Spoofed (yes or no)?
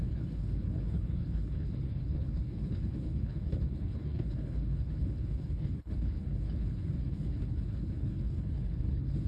yes